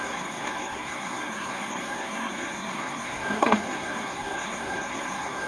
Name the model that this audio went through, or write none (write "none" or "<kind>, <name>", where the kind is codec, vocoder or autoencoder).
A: codec, SNAC